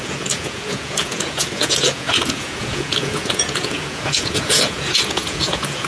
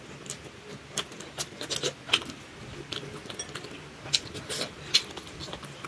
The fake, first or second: first